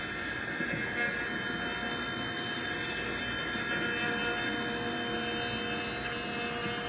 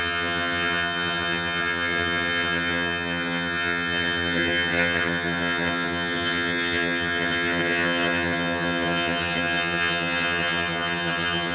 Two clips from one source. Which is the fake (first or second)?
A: second